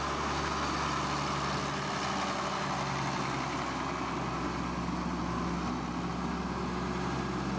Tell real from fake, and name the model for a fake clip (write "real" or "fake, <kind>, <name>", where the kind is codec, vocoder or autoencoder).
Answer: real